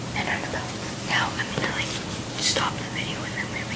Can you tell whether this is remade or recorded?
recorded